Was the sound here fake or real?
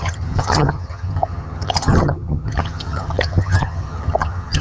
fake